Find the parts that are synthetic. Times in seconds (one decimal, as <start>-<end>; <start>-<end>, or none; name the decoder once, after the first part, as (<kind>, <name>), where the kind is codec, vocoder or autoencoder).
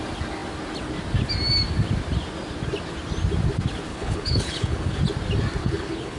3.9-5.0 (codec, HILCodec); 5.6-6.2